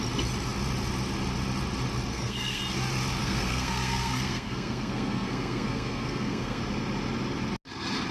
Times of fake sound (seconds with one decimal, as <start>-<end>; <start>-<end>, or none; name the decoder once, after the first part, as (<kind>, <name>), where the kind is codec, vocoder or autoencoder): 2.1-2.6 (codec, SNAC); 3.2-6.6